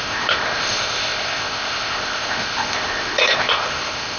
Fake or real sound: fake